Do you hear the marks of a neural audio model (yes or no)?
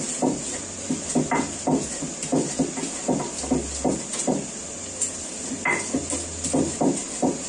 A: no